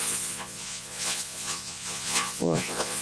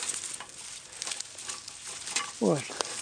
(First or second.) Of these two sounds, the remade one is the first